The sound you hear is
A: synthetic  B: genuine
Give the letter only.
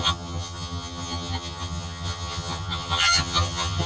A